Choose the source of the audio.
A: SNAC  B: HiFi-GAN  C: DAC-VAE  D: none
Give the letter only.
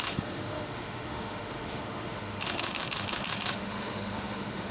C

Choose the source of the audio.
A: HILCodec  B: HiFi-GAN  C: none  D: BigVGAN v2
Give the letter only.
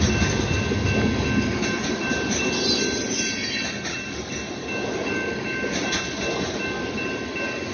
C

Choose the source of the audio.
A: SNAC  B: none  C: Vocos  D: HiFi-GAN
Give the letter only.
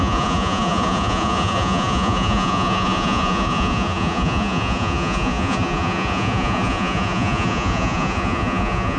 C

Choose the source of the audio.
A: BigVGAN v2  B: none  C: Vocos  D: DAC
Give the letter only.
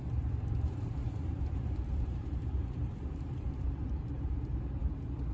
A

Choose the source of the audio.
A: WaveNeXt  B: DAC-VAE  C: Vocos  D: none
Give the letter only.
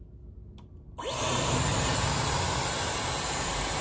D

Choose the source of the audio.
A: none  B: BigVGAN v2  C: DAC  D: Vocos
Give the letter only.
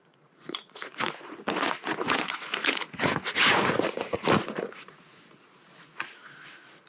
D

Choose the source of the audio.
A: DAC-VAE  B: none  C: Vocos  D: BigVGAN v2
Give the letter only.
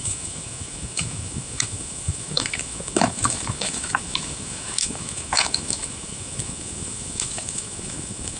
A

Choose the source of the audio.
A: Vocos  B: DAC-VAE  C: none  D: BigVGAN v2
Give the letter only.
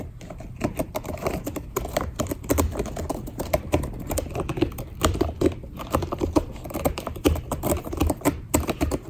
D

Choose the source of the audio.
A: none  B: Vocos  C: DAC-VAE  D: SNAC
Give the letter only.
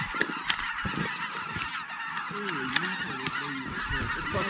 A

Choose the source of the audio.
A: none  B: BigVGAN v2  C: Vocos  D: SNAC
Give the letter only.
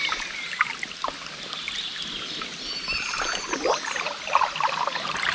A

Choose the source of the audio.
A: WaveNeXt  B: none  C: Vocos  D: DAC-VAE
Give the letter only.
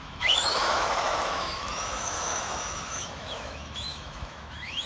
D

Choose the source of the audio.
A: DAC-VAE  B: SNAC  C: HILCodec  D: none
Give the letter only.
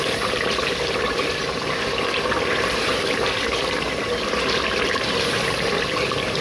D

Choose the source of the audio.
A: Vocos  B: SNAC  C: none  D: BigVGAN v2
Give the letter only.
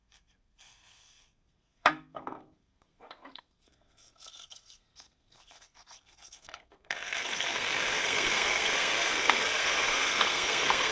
B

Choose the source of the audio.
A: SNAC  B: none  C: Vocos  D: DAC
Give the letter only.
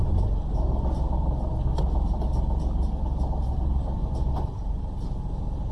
B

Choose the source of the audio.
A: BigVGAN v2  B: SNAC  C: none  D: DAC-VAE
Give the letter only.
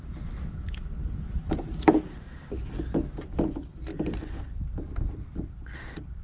C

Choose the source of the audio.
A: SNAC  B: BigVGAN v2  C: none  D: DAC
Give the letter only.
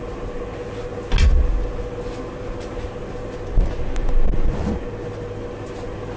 C